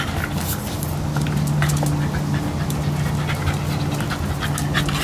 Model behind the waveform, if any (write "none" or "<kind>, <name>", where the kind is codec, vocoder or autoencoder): none